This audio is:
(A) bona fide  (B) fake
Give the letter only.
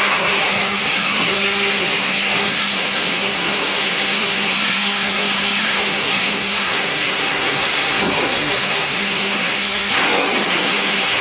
B